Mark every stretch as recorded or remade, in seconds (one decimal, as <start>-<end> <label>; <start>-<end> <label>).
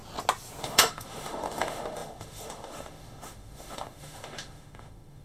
0.0-0.6 recorded; 0.6-5.2 remade